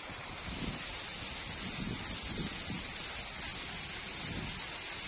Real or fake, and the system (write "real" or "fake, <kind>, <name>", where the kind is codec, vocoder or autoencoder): real